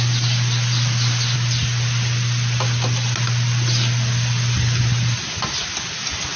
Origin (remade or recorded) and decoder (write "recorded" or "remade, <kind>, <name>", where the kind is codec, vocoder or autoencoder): recorded